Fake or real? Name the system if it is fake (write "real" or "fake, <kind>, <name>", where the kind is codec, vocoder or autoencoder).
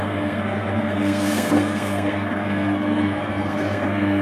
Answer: fake, codec, SNAC